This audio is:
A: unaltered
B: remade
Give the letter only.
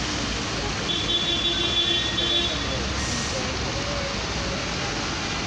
A